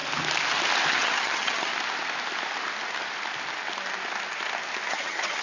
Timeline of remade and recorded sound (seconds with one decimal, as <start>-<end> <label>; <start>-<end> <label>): 0.0-0.9 recorded; 0.9-1.7 remade; 1.7-4.9 recorded; 4.9-5.4 remade